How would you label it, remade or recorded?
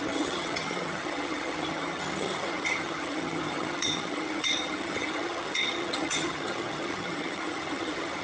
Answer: remade